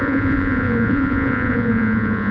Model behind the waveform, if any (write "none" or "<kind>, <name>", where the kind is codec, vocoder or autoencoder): vocoder, Vocos